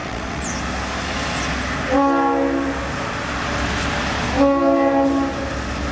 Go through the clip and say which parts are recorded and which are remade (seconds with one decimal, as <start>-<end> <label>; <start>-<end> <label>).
0.0-0.5 remade; 0.5-5.9 recorded